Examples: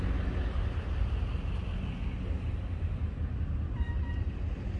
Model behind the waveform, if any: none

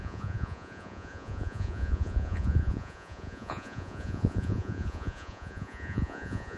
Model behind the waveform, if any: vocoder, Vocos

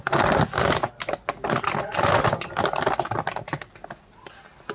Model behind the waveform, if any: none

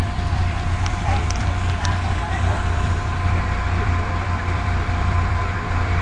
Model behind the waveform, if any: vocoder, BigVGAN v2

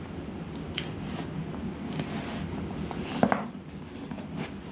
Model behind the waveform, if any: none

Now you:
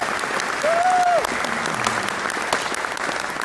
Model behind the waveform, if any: none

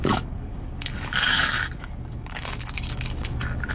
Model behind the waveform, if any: codec, DAC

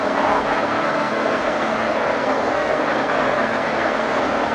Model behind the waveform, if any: codec, SNAC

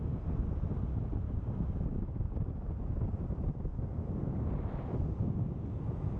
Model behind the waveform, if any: none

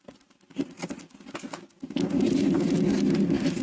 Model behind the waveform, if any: none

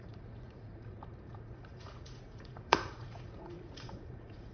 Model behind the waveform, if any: vocoder, Vocos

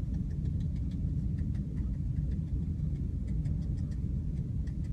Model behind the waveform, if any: none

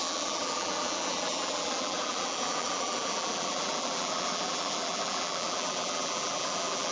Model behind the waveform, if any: vocoder, BigVGAN v2